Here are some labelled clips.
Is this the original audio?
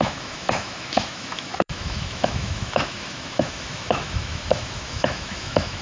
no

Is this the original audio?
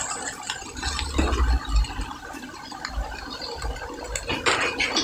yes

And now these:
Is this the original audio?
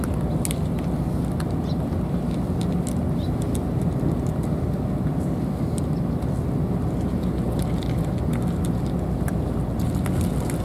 yes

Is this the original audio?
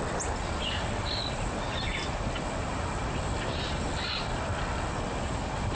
yes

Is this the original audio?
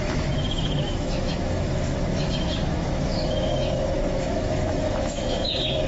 no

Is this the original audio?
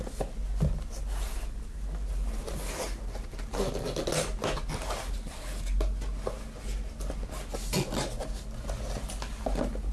yes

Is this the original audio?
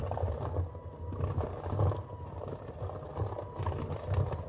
yes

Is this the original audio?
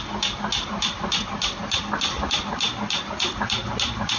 yes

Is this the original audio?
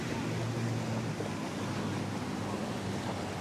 yes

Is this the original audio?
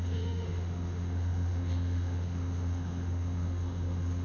no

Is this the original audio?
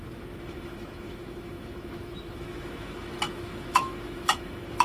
no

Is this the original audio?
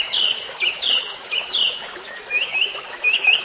no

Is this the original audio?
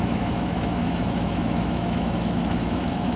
no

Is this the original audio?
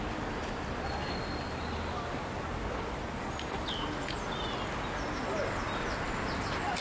yes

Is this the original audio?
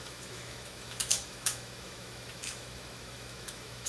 no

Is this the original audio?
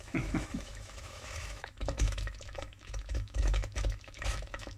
no